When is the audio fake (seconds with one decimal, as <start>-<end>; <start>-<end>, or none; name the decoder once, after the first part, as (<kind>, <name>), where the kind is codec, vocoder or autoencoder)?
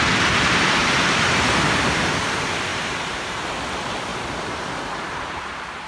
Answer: 0.8-2.0 (vocoder, BigVGAN v2); 2.7-3.4; 4.1-5.4